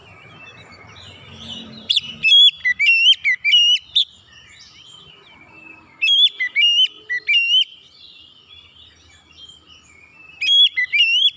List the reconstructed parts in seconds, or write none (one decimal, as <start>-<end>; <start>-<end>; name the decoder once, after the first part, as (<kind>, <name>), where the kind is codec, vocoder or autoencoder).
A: 0.0-2.1 (vocoder, BigVGAN v2)